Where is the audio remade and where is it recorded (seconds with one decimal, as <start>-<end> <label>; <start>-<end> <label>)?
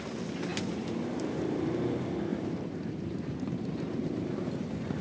0.0-0.5 recorded; 0.5-1.4 remade; 1.4-2.3 recorded; 2.3-5.0 remade